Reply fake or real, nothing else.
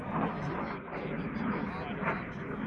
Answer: real